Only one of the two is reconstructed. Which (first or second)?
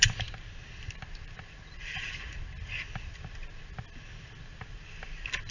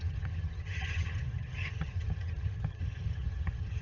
second